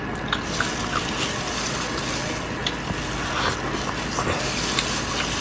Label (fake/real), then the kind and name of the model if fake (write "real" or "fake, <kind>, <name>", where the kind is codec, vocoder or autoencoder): real